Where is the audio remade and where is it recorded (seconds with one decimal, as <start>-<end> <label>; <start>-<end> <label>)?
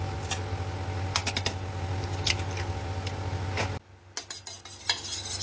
0.0-5.4 recorded